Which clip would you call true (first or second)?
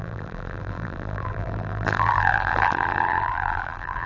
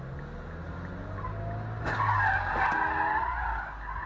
second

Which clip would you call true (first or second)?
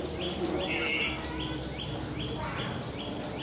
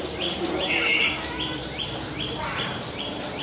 first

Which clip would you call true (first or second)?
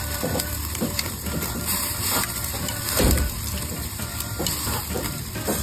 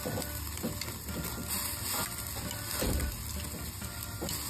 second